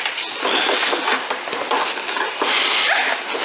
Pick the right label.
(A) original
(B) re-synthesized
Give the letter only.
A